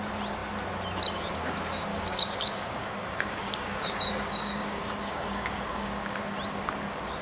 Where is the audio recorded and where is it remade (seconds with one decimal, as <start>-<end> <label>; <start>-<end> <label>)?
0.0-1.9 recorded; 1.9-6.2 remade; 6.2-7.2 recorded